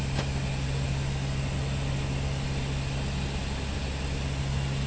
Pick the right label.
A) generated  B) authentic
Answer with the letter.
B